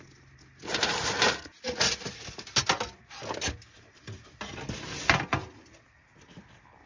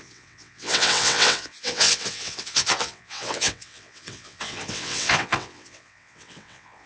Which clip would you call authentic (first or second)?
first